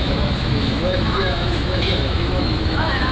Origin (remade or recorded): remade